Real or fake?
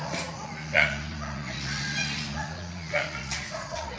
fake